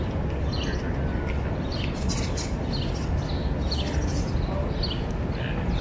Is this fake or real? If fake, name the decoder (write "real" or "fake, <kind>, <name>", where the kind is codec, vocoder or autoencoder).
real